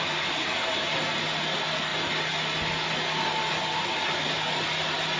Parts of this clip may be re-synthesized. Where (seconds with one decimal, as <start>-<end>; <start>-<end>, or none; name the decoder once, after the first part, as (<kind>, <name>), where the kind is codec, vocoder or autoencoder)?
none

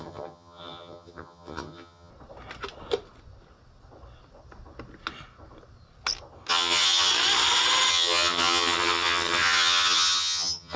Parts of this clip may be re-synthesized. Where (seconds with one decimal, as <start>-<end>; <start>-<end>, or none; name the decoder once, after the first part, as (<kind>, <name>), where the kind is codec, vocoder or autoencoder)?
0.0-2.1 (vocoder, HiFi-GAN); 6.5-7.1; 7.9-10.8

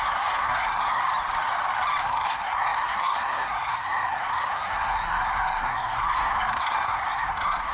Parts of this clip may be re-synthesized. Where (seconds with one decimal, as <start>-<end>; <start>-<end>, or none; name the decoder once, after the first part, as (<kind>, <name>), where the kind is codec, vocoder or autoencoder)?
0.0-1.0 (codec, SNAC); 2.0-7.7

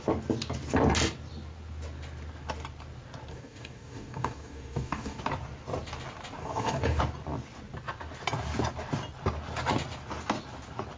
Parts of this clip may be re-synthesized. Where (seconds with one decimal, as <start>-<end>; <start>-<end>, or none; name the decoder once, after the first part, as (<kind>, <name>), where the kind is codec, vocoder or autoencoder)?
3.3-5.2 (codec, DAC); 6.4-7.0

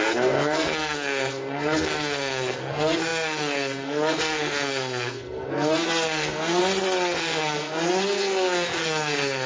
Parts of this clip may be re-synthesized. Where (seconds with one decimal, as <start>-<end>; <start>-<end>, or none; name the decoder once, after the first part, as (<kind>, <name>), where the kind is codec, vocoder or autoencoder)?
0.0-6.6 (codec, SNAC); 7.2-9.5

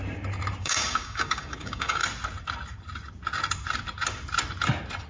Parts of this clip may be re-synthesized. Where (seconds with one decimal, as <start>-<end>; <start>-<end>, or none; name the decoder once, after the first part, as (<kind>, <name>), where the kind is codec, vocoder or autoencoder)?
0.6-2.0 (codec, DAC)

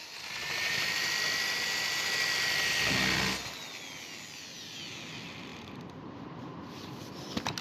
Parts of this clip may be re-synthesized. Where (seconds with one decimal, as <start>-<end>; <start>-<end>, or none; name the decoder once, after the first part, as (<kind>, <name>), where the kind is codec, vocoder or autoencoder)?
5.5-6.8 (vocoder, BigVGAN v2)